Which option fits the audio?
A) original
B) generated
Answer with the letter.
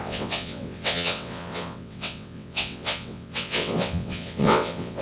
B